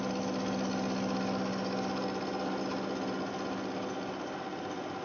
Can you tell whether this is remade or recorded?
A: recorded